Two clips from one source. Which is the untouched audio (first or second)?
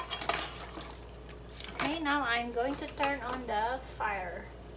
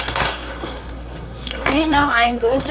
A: first